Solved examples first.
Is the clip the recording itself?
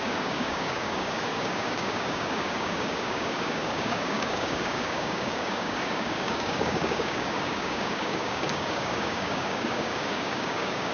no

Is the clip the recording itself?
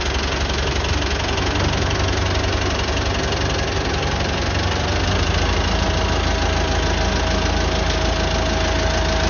yes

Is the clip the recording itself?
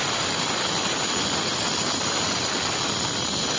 yes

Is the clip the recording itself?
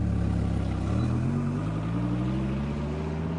yes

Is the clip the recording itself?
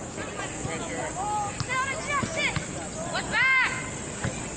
yes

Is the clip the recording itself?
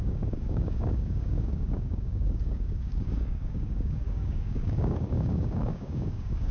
no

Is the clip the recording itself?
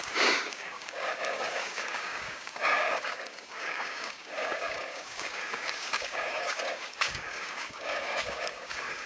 no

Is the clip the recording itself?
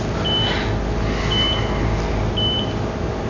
yes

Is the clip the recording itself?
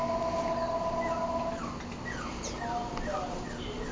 yes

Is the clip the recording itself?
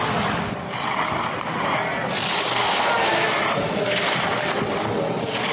yes